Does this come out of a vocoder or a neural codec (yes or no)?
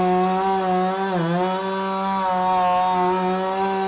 no